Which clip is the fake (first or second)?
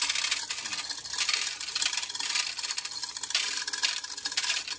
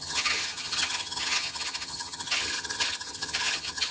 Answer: second